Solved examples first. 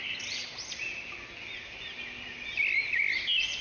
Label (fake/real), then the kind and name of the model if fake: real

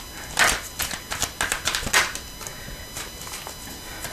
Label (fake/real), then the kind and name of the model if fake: real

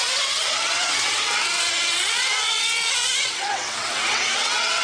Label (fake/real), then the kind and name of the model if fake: fake, vocoder, WaveNeXt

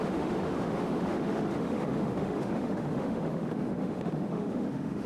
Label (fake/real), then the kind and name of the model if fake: fake, autoencoder, DAC-VAE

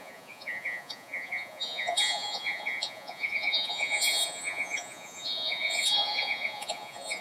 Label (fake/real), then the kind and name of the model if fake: fake, vocoder, Vocos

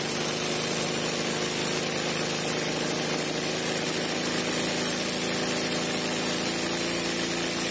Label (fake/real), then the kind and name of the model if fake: real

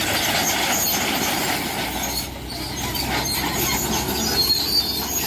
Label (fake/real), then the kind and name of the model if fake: real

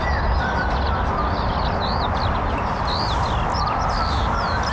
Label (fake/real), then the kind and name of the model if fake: real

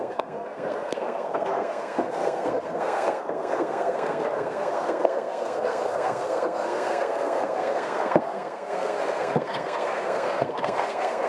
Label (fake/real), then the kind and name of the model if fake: fake, codec, SNAC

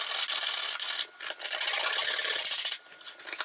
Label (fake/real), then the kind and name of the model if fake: real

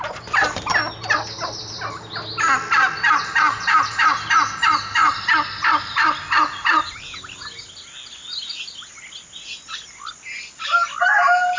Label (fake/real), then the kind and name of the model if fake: real